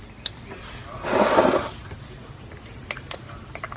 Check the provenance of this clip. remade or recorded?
recorded